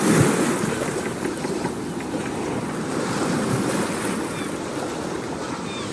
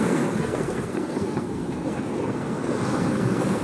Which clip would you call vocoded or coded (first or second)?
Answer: second